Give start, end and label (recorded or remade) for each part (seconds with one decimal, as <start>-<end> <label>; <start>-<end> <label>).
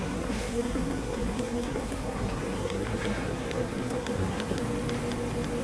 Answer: 0.0-4.6 remade; 4.6-5.6 recorded